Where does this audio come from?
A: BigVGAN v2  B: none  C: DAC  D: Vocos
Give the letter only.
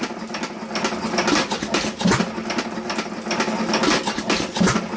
B